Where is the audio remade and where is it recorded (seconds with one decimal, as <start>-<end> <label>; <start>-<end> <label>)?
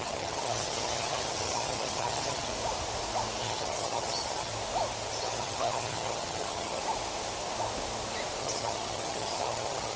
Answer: 0.0-2.5 remade; 2.5-3.4 recorded; 3.4-4.5 remade; 4.5-5.2 recorded; 5.2-6.8 remade; 6.8-8.4 recorded; 8.4-10.0 remade